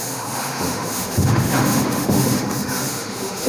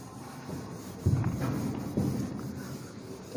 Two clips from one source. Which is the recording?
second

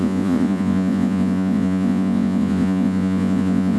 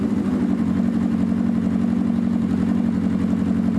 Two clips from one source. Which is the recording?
second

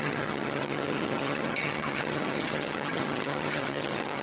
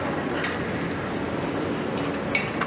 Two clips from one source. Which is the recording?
second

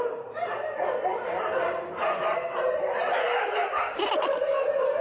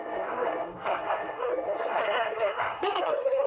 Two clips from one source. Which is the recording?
first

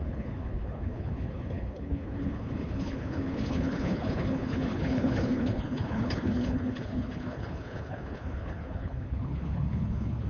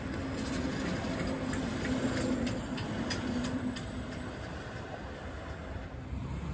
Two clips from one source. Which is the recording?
second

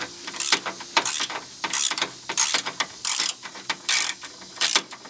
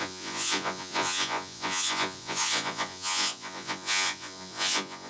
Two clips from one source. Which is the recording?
first